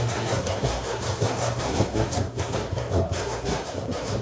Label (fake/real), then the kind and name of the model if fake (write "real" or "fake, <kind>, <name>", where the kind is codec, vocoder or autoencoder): fake, codec, SNAC